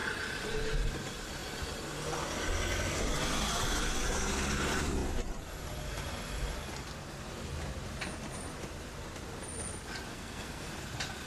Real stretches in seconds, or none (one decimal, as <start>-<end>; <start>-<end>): 0.0-10.1; 10.7-11.3